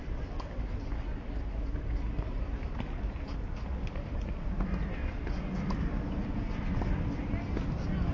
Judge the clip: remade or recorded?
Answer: recorded